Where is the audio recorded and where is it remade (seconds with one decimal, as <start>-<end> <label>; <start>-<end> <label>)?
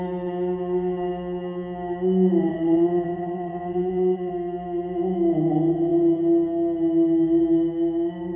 0.0-2.5 recorded; 2.5-4.3 remade; 4.3-8.4 recorded